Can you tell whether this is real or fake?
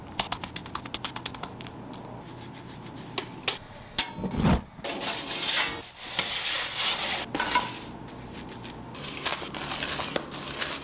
real